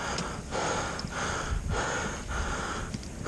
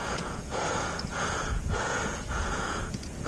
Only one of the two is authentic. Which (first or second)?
first